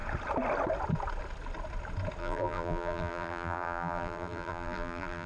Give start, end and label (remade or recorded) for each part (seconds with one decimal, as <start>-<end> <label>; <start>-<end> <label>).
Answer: 0.0-2.2 recorded; 2.2-5.3 remade